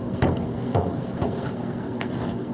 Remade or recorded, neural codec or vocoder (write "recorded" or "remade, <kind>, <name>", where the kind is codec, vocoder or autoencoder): remade, codec, SNAC